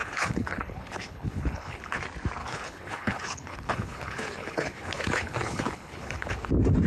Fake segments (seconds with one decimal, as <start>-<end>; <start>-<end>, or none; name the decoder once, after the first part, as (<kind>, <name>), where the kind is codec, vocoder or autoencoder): 0.0-2.0 (codec, HILCodec); 2.4-6.5